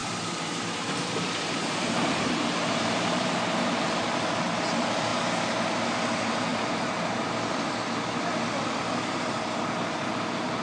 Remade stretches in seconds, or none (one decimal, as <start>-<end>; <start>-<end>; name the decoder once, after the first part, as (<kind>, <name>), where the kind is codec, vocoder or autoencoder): 0.0-3.8 (vocoder, BigVGAN v2); 6.5-7.3